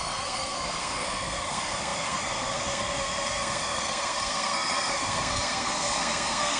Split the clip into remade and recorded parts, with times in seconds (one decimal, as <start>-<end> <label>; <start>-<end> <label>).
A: 0.0-6.6 remade